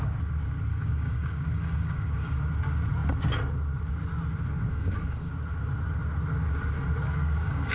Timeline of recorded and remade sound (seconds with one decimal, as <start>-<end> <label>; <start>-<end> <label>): 0.0-0.7 recorded; 0.7-2.4 remade; 2.4-4.7 recorded; 4.7-5.3 remade; 5.3-7.1 recorded; 7.1-7.7 remade